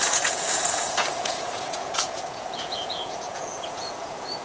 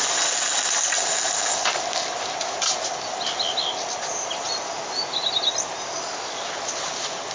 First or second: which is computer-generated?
first